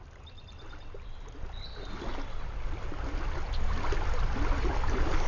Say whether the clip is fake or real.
real